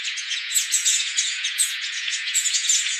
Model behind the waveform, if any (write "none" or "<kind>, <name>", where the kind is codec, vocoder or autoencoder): vocoder, Vocos